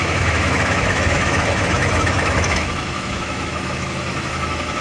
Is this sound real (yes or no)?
no